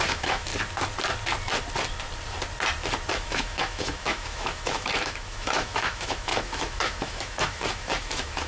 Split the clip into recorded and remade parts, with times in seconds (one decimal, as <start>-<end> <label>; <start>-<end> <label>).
0.0-0.5 remade; 0.5-3.1 recorded; 3.1-8.5 remade